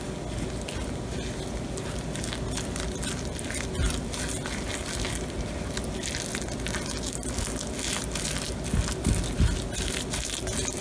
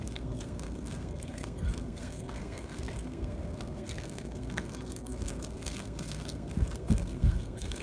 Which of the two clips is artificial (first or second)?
second